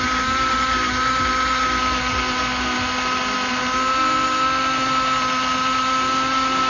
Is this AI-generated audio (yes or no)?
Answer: no